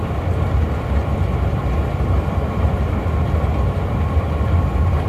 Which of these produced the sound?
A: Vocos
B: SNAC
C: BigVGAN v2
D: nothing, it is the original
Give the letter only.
C